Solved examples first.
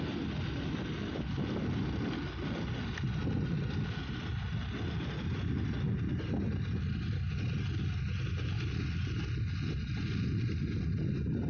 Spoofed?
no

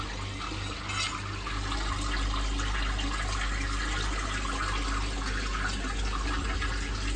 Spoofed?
no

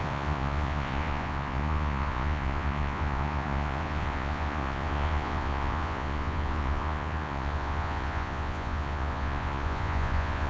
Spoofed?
yes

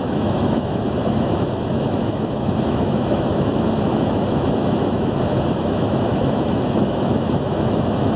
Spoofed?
yes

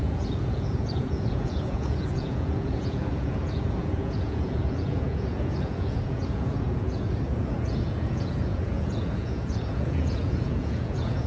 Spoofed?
yes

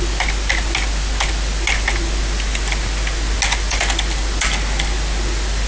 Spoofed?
no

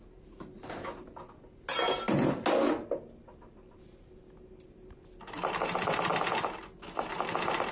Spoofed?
no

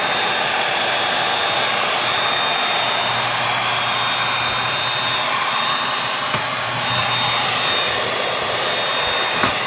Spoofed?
no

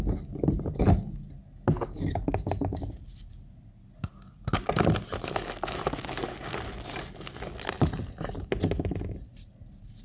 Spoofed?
no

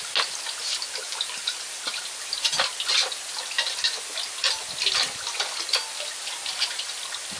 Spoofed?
no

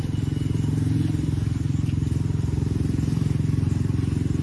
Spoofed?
yes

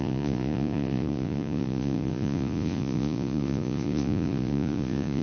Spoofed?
yes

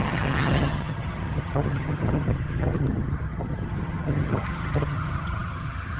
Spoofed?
yes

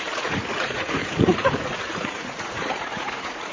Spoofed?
yes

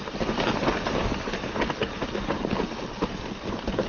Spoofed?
no